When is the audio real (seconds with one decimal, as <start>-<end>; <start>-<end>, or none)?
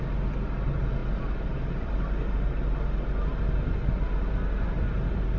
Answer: 0.0-5.4